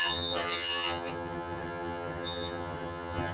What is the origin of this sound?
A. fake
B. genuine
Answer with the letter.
A